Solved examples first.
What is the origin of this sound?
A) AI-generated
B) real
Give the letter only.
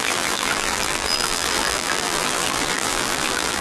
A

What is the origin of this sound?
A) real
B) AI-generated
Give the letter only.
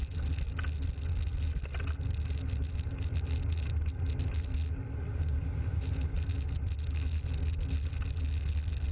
A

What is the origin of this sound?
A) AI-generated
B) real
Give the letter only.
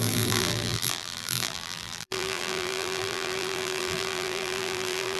A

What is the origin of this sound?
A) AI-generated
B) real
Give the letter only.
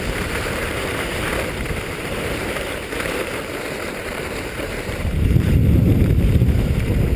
A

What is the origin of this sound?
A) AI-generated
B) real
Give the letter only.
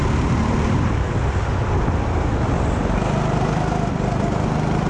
B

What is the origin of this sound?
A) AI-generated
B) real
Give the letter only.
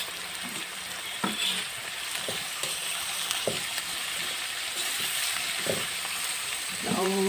A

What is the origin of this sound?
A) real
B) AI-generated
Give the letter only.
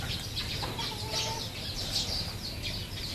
A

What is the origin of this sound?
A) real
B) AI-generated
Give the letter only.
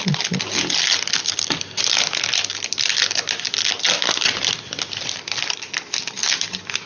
A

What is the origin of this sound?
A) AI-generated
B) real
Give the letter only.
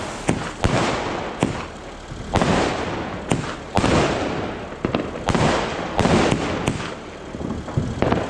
B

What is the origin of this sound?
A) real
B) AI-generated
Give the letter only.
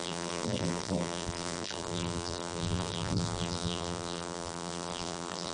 B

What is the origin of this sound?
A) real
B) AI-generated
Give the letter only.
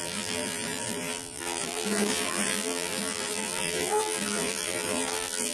B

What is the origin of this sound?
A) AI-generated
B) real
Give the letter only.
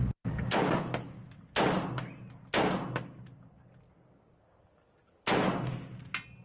B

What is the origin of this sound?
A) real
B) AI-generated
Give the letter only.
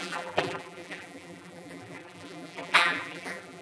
B